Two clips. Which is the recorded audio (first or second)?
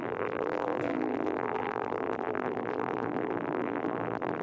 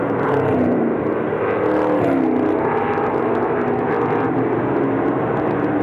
second